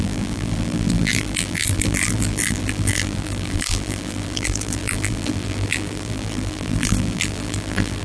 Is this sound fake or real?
fake